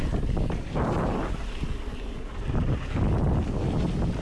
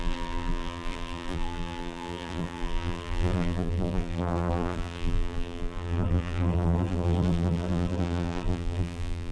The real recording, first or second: first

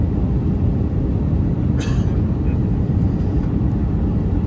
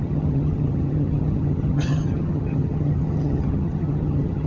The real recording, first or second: first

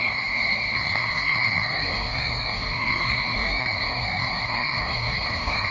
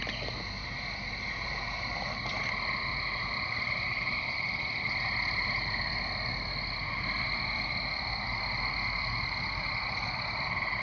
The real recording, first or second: second